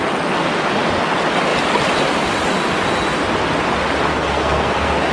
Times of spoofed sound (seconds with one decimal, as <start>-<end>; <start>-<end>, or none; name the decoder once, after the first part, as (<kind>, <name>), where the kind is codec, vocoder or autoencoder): 4.1-5.1 (codec, SNAC)